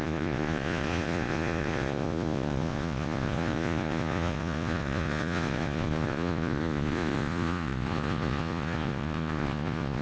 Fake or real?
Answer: fake